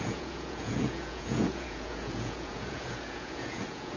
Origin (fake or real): fake